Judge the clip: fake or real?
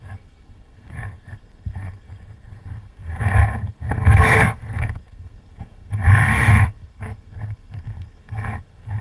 fake